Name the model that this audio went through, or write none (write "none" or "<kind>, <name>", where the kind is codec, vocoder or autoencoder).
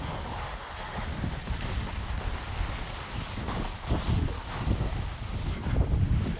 none